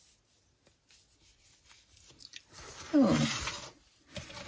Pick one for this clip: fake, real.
real